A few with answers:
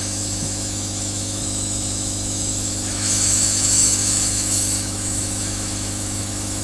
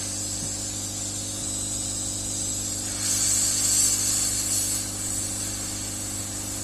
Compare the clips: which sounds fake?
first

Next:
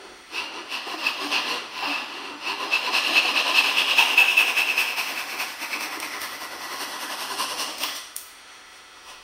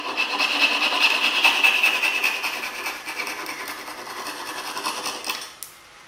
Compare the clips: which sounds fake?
first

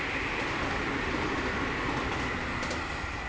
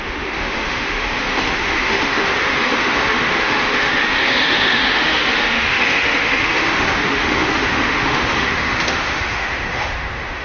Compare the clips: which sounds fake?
second